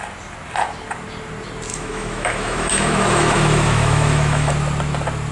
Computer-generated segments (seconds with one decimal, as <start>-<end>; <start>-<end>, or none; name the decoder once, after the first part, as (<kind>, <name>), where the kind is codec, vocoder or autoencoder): 1.7-4.5 (autoencoder, DAC-VAE)